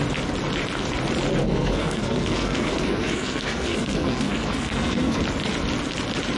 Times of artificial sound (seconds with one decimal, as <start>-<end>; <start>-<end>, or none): 1.4-5.2

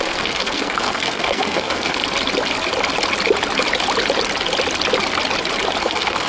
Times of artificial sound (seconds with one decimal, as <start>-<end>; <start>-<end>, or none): 0.0-2.0; 5.8-6.3

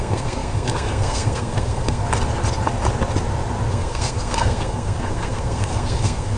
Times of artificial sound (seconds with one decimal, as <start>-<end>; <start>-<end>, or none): 0.0-2.0; 3.7-6.4

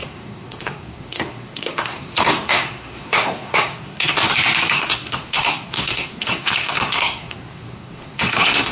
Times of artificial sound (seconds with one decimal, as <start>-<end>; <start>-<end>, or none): 0.0-4.2; 4.7-8.7

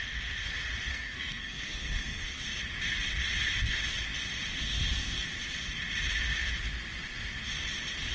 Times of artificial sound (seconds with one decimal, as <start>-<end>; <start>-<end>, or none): 0.9-2.4

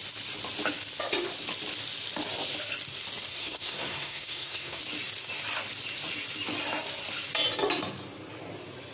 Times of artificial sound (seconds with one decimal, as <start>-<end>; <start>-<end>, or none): 3.3-4.8